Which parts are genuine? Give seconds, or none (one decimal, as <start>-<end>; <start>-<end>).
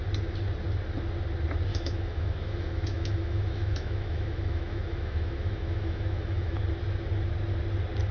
0.0-1.7; 6.6-8.1